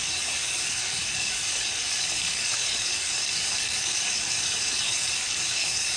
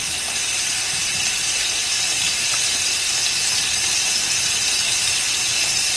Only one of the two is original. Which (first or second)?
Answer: second